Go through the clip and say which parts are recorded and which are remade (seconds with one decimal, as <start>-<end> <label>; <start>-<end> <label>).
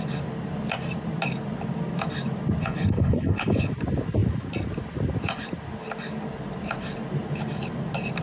0.0-2.6 recorded; 2.6-3.7 remade; 3.7-8.2 recorded